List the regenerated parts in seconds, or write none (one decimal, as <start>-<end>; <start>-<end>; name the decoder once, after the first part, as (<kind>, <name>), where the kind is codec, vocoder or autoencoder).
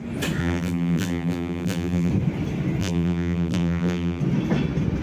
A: 0.4-2.1 (vocoder, BigVGAN v2); 2.8-4.2